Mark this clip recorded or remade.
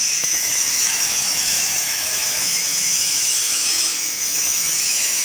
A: remade